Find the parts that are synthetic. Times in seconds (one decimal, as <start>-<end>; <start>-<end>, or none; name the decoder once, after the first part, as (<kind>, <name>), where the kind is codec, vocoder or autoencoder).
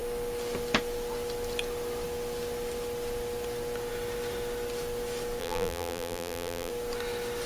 5.4-6.7 (vocoder, BigVGAN v2)